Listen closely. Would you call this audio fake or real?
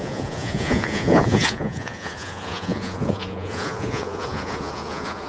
fake